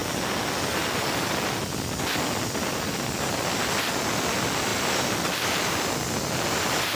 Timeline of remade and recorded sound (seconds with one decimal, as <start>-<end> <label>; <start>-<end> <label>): 0.0-7.0 recorded